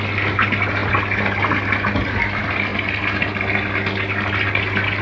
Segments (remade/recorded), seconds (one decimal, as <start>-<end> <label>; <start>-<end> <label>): 0.0-5.0 recorded